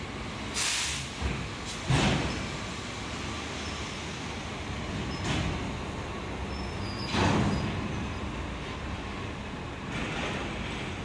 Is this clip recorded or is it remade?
recorded